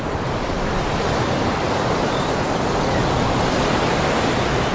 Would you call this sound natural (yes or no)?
yes